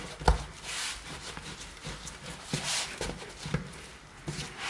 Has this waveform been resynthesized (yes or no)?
no